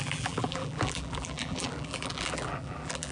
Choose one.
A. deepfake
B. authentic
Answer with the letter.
A